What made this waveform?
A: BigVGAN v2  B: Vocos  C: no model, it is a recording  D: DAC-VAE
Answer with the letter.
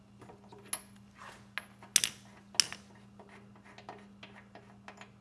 C